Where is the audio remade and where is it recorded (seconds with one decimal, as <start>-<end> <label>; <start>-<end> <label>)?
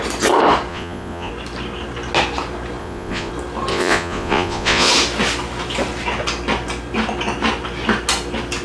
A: 0.0-0.7 recorded; 0.7-1.3 remade; 1.3-2.8 recorded; 2.8-3.3 remade; 3.3-3.7 recorded; 3.7-4.9 remade; 4.9-8.6 recorded